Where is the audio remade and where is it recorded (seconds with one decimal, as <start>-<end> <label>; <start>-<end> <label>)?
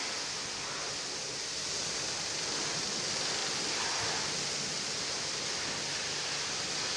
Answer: 0.0-7.0 recorded